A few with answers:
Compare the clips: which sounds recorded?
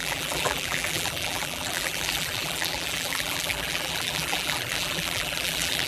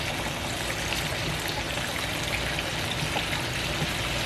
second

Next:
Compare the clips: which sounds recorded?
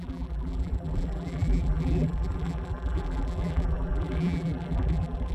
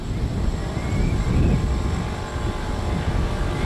second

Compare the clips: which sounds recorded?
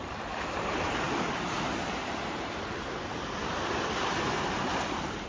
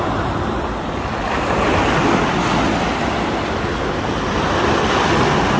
second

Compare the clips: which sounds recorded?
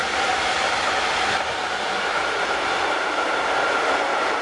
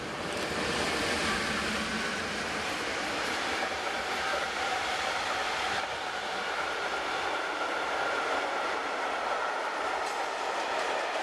first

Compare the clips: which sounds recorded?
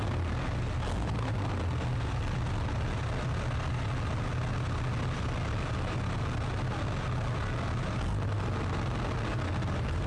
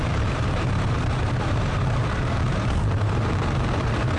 first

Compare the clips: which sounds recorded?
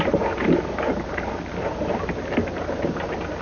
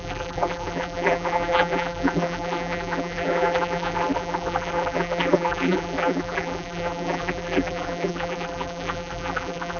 first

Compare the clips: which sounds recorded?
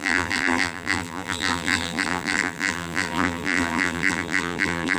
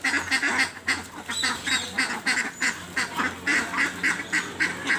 second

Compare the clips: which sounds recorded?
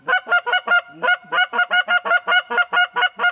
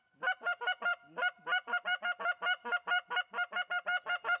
second